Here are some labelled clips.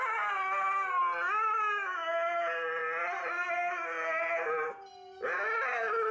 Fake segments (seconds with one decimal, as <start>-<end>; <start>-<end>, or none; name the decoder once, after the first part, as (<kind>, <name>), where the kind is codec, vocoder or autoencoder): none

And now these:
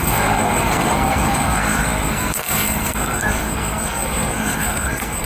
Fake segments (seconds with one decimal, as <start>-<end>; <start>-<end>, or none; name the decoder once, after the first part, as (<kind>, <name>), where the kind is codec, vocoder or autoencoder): 0.0-5.3 (codec, SNAC)

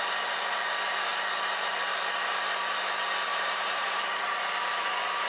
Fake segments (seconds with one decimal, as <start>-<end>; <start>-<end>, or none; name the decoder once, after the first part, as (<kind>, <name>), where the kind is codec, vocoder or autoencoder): 3.3-5.3 (vocoder, BigVGAN v2)